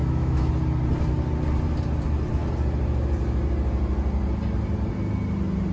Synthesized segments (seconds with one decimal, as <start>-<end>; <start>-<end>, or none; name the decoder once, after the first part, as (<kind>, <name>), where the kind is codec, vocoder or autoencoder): 0.0-0.5 (autoencoder, DAC-VAE)